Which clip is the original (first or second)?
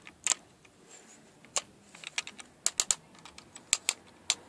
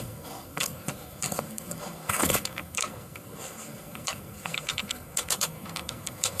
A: first